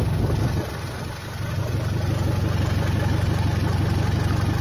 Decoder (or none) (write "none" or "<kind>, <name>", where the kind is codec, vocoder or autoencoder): none